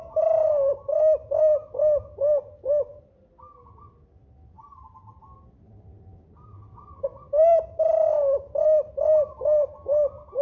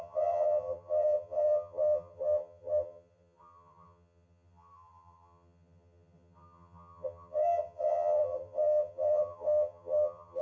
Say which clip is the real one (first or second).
first